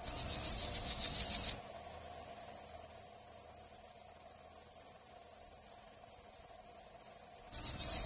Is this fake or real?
real